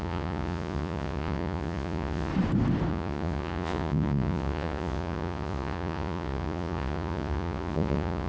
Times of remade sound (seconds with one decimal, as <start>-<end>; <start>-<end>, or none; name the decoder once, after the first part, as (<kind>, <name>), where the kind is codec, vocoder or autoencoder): 0.0-2.3 (vocoder, Vocos); 2.9-8.3